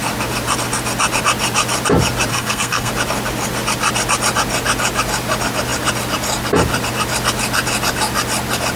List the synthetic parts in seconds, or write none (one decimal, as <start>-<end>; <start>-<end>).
2.3-2.9